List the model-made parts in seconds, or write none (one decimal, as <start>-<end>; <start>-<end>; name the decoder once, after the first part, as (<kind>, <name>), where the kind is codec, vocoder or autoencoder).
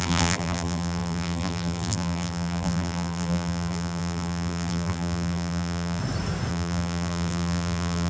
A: 0.0-6.0 (vocoder, BigVGAN v2); 6.5-8.1